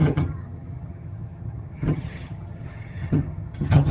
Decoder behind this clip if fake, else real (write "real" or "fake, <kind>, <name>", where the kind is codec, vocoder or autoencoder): fake, vocoder, HiFi-GAN